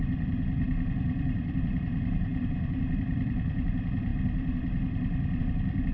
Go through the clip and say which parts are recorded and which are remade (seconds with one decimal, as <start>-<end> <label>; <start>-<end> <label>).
0.0-5.9 remade